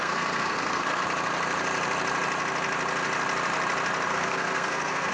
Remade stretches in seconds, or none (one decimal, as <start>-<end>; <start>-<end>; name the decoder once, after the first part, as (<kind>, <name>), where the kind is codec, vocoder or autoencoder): 0.0-1.0 (codec, SNAC); 4.1-5.1